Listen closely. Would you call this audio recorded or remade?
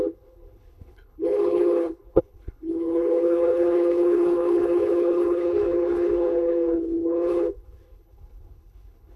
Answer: remade